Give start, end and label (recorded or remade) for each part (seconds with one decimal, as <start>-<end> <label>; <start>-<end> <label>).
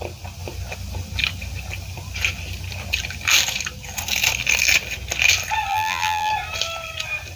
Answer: 0.0-5.7 recorded; 5.7-6.3 remade; 6.3-7.4 recorded